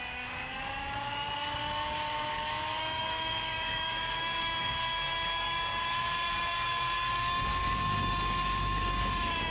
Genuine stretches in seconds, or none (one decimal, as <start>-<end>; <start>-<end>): none